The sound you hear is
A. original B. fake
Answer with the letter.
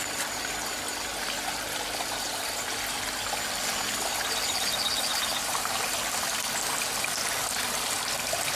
A